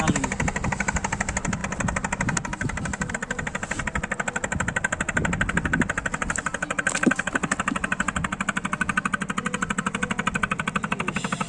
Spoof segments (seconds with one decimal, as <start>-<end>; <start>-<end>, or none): none